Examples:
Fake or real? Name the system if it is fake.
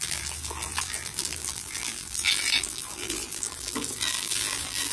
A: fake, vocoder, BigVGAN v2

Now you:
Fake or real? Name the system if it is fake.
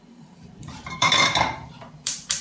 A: fake, vocoder, BigVGAN v2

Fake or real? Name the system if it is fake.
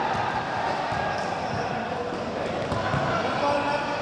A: fake, vocoder, BigVGAN v2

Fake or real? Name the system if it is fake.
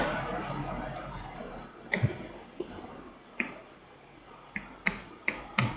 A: fake, vocoder, BigVGAN v2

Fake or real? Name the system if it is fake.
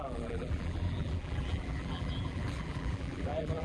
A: fake, vocoder, BigVGAN v2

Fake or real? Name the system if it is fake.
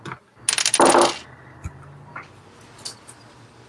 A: real